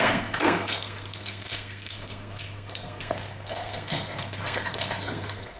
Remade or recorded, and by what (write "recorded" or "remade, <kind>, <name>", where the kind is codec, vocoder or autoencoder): remade, codec, SNAC